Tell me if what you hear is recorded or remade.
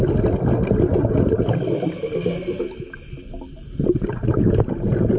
recorded